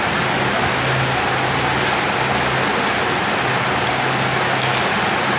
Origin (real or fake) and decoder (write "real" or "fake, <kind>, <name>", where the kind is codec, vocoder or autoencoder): real